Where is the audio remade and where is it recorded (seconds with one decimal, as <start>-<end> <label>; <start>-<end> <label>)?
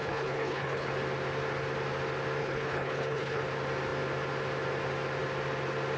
0.0-0.9 remade; 0.9-2.4 recorded; 2.4-3.4 remade; 3.4-6.0 recorded